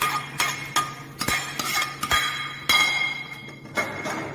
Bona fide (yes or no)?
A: yes